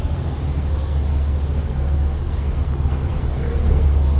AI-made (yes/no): yes